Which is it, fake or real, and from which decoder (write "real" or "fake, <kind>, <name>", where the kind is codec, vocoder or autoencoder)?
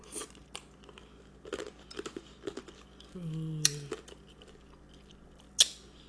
real